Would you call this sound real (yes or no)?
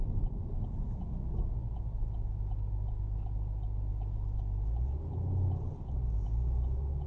yes